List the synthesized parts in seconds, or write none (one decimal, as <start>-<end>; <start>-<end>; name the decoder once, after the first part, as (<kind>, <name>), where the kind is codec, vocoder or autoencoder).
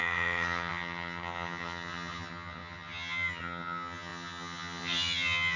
0.0-5.6 (vocoder, HiFi-GAN)